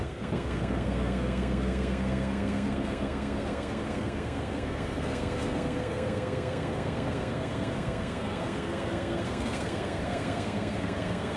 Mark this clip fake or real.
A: fake